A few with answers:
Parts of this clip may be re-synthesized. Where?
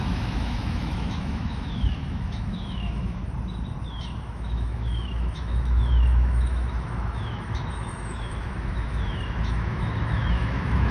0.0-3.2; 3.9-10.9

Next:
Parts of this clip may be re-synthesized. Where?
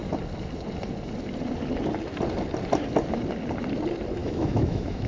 4.2-5.1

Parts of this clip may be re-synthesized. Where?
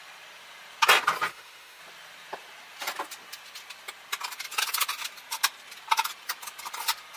1.3-1.8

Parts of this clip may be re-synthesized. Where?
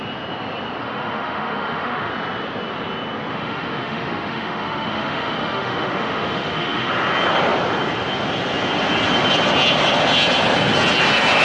0.8-2.1; 3.3-6.9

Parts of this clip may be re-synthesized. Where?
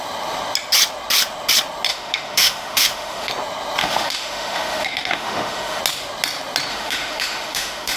1.9-3.3; 3.8-5.8; 6.7-8.0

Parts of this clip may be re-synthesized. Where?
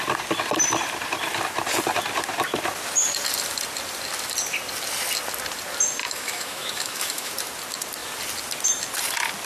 6.0-7.3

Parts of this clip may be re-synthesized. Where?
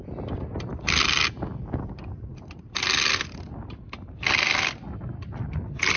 none